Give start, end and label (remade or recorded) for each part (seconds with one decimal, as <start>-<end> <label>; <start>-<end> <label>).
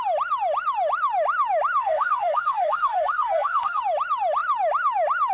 0.0-1.8 recorded; 1.8-3.8 remade; 3.8-5.3 recorded